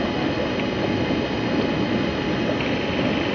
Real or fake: real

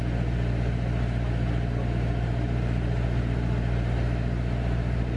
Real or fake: real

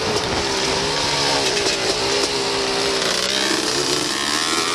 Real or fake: real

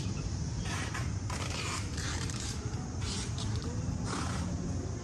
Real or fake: fake